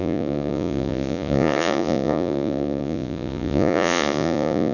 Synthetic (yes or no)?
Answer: yes